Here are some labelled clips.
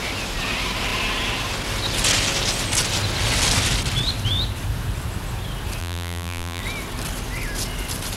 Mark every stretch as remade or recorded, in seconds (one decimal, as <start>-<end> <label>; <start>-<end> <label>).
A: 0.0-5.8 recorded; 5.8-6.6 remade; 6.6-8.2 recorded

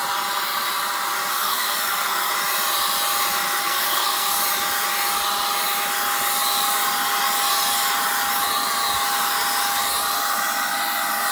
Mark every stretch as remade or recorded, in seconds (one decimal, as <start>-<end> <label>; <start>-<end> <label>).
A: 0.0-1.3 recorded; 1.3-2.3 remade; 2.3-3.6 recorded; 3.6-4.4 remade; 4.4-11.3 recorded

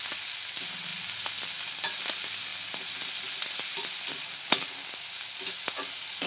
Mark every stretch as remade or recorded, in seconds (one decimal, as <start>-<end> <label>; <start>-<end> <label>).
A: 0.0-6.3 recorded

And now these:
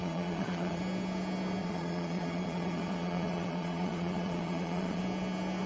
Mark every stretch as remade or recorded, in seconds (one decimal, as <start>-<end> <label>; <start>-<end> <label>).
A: 0.0-0.8 remade; 0.8-1.6 recorded; 1.6-5.0 remade; 5.0-5.7 recorded